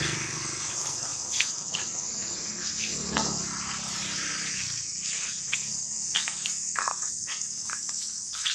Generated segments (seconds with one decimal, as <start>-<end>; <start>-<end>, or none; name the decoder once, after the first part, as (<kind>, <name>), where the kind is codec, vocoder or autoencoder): 0.0-3.4 (codec, SNAC); 4.5-8.5